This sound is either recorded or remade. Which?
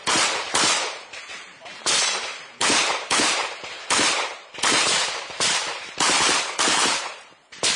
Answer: remade